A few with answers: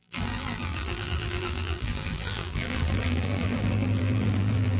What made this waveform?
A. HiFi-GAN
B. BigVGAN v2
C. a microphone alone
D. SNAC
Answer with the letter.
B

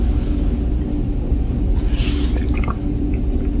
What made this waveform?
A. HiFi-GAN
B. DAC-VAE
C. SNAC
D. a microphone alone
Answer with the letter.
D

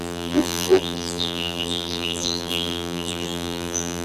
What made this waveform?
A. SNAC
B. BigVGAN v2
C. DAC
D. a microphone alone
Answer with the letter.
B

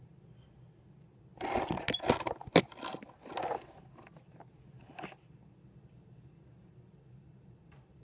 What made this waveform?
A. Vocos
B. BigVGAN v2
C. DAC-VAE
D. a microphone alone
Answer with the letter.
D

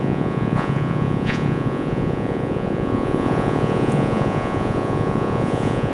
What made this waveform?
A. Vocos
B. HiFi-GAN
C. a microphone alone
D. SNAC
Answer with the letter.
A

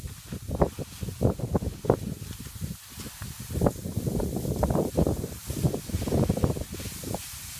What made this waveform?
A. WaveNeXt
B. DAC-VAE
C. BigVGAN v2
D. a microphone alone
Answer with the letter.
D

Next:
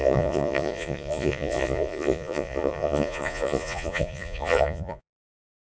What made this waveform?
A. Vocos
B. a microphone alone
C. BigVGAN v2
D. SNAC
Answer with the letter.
A